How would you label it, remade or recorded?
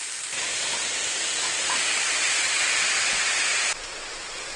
recorded